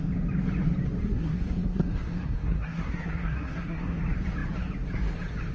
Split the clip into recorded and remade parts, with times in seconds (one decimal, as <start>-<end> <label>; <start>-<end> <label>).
0.0-1.0 recorded; 1.0-4.0 remade; 4.0-5.5 recorded